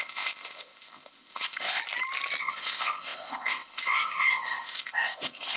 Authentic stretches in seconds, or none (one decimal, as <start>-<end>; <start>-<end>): 1.8-2.4